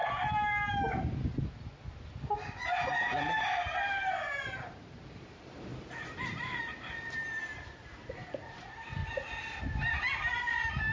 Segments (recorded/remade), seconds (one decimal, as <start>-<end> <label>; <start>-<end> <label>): 0.0-1.3 remade; 1.3-4.3 recorded; 4.3-9.0 remade; 9.0-9.6 recorded; 9.6-10.9 remade